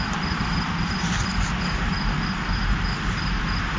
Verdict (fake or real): real